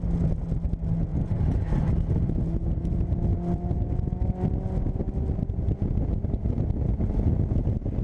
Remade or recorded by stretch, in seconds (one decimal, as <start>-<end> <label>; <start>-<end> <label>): 0.0-1.1 recorded; 1.1-1.9 remade; 1.9-8.0 recorded